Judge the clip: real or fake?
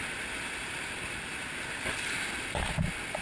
real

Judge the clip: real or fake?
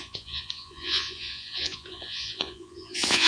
fake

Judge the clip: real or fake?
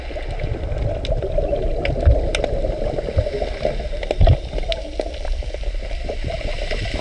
real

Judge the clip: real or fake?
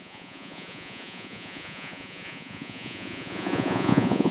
fake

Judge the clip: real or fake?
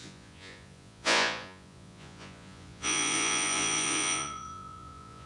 fake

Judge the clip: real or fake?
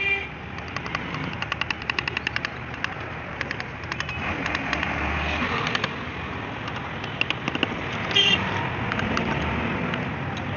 real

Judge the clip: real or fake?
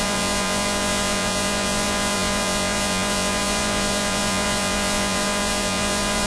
fake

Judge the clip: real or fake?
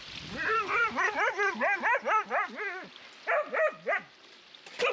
real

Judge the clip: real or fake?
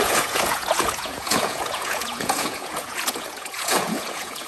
fake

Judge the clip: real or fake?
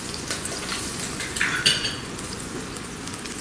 fake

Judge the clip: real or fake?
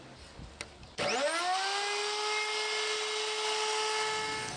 real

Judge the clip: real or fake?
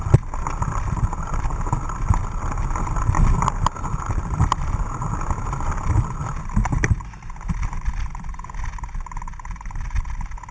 real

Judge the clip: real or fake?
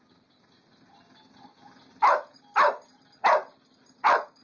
real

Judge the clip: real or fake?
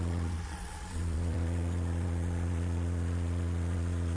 fake